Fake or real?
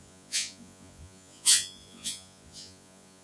fake